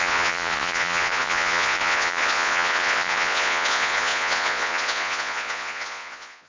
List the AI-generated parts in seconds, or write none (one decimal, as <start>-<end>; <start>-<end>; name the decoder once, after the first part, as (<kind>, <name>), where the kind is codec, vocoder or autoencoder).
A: 0.0-6.5 (vocoder, Vocos)